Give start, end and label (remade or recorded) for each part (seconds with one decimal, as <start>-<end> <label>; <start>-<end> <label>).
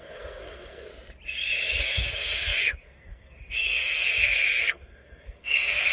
0.0-0.9 remade; 0.9-1.8 recorded; 1.8-5.9 remade